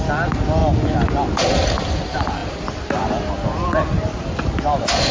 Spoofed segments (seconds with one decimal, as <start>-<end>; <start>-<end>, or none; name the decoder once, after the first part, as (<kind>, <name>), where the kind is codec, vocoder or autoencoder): none